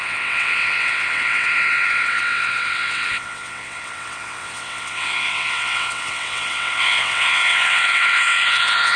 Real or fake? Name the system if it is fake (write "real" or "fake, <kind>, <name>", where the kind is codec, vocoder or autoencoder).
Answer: fake, vocoder, WaveNeXt